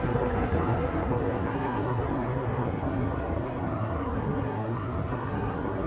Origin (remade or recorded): remade